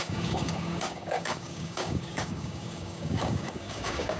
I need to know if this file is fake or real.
fake